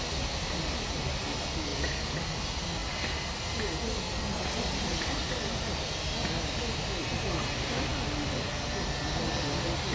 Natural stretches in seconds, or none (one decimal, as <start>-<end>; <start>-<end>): 0.0-9.9